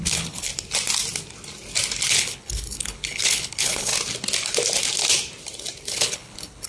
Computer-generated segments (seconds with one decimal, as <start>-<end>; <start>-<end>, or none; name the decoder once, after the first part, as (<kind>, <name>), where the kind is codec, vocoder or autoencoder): 0.0-0.5 (codec, HILCodec); 2.1-3.9; 5.9-6.7